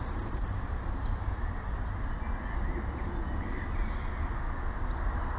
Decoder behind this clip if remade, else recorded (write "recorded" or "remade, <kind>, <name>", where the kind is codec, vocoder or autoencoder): recorded